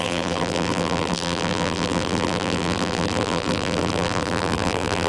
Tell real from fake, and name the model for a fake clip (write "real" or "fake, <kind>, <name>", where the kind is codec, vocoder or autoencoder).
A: fake, vocoder, BigVGAN v2